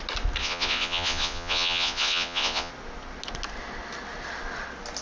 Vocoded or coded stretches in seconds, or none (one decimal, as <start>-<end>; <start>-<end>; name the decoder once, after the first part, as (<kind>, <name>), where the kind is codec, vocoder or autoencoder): 0.4-2.7 (vocoder, Vocos)